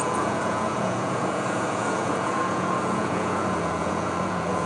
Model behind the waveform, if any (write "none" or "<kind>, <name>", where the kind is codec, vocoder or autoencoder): vocoder, Vocos